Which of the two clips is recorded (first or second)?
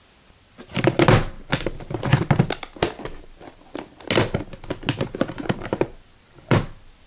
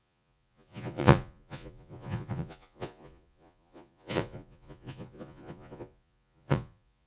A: first